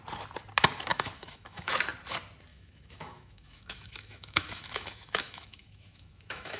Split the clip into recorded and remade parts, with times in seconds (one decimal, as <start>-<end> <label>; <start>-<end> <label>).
0.0-0.9 recorded; 0.9-1.7 remade; 1.7-2.5 recorded; 2.5-6.6 remade